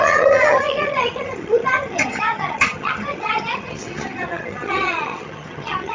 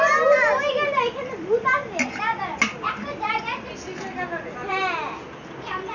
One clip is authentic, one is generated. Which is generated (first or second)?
first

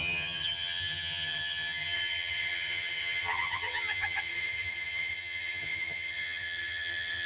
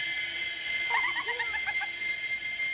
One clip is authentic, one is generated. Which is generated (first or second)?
first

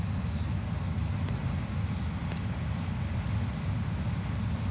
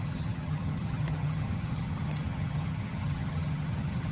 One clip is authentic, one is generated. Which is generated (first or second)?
second